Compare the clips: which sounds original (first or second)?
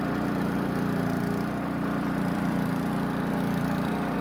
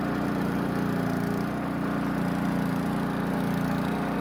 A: second